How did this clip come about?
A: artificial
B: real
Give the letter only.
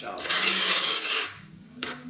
A